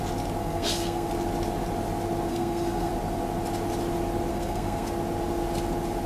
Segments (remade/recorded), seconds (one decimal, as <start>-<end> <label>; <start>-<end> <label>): 0.0-0.4 recorded; 0.4-1.1 remade; 1.1-2.3 recorded; 2.3-2.9 remade; 2.9-4.3 recorded; 4.3-4.9 remade; 4.9-6.1 recorded